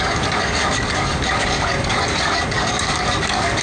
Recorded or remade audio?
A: remade